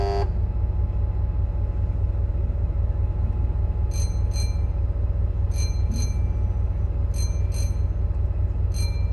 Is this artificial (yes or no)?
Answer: no